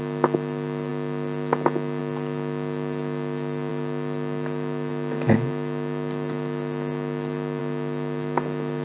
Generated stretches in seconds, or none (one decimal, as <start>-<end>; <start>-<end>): none